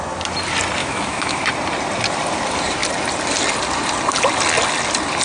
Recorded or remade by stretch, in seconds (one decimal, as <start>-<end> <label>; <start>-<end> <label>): 0.0-0.8 recorded; 0.8-1.4 remade; 1.4-5.2 recorded